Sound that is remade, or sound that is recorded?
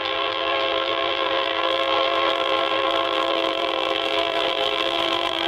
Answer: remade